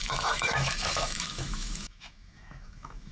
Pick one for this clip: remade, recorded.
remade